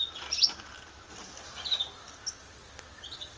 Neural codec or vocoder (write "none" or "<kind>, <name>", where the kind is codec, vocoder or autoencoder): none